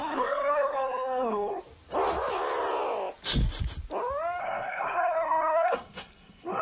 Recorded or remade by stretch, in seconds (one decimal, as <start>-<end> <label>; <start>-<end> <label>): 0.0-1.6 remade; 1.6-4.4 recorded; 4.4-6.6 remade